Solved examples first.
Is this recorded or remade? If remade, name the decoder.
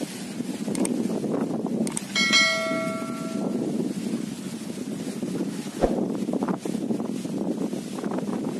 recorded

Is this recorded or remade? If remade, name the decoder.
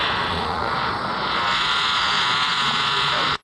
remade, vocoder, Vocos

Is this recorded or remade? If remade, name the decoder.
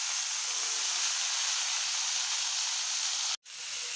recorded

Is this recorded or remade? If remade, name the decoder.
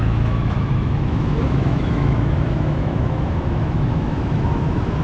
remade, autoencoder, DAC-VAE